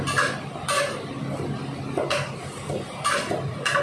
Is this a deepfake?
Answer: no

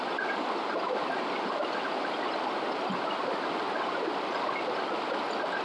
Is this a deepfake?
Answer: no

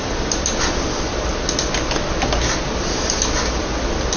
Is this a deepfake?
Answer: no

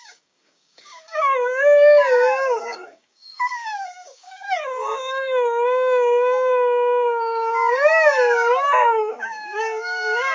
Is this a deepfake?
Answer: yes